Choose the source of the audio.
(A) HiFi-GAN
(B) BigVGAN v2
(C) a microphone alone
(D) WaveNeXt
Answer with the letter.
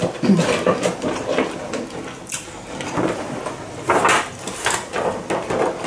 C